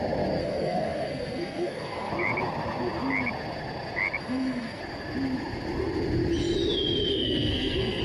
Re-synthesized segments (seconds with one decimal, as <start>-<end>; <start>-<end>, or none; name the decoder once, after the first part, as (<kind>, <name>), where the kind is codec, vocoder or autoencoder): 0.4-2.1 (codec, SNAC); 4.2-4.8; 7.1-8.0

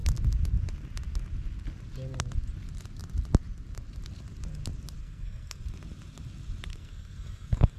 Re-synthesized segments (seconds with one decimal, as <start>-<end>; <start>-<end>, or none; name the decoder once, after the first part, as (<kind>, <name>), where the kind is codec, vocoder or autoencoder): 5.0-5.6 (codec, SNAC); 6.7-7.8

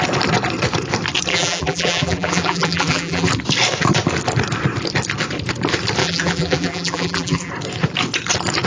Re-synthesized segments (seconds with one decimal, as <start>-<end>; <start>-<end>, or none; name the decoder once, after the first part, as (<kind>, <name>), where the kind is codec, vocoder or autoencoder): 1.3-3.3 (vocoder, BigVGAN v2); 6.0-7.5

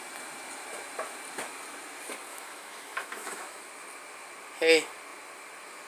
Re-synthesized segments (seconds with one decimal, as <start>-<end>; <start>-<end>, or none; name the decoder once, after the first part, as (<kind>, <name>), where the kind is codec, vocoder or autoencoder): 2.3-3.6 (autoencoder, DAC-VAE)

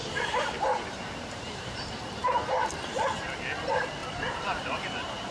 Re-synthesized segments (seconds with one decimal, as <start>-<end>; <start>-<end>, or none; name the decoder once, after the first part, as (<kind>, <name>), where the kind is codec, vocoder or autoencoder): 0.0-1.9 (vocoder, BigVGAN v2); 4.0-5.3

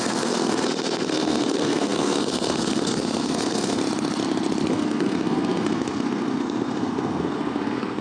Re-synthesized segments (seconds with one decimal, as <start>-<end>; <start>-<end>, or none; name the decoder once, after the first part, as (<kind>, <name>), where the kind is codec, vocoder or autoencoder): 0.0-3.8 (codec, SNAC); 4.7-8.0

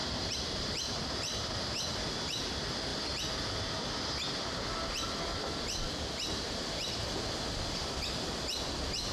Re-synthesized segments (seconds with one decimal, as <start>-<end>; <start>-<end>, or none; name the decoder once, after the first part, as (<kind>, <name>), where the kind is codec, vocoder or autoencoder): 0.0-2.5 (vocoder, BigVGAN v2)